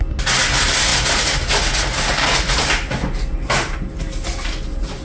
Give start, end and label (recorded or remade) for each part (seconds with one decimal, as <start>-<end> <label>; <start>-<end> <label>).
0.0-5.0 recorded